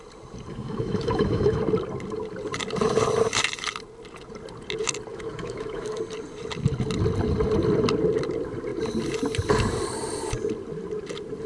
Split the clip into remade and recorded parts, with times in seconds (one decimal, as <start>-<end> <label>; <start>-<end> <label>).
0.0-0.5 recorded; 0.5-1.6 remade; 1.6-5.1 recorded; 5.1-6.0 remade; 6.0-11.5 recorded